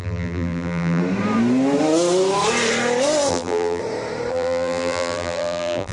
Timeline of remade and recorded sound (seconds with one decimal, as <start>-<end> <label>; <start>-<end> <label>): 0.0-1.0 remade; 1.0-3.3 recorded; 3.3-3.8 remade; 3.8-4.3 recorded; 4.3-5.9 remade

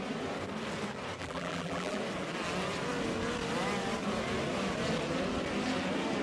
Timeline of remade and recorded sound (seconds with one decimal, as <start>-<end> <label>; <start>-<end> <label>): 0.0-1.2 recorded; 1.2-2.0 remade; 2.0-6.2 recorded

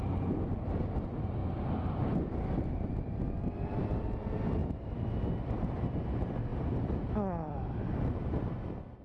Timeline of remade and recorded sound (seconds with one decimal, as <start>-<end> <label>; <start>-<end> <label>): 0.0-4.6 recorded; 4.6-5.2 remade; 5.2-6.5 recorded; 6.5-7.7 remade; 7.7-9.0 recorded